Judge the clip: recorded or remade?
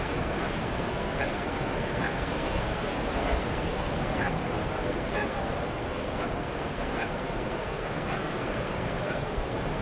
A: remade